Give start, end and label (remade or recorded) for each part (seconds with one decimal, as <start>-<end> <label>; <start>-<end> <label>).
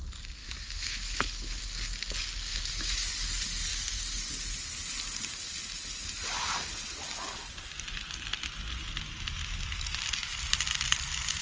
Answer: 0.0-0.4 recorded; 0.4-1.6 remade; 1.6-2.5 recorded; 2.5-3.1 remade; 3.1-11.4 recorded